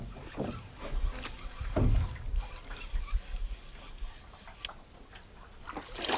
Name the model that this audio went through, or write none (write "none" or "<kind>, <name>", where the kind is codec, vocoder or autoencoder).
none